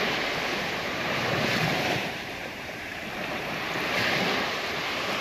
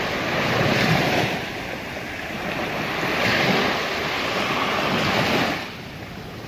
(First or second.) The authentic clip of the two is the second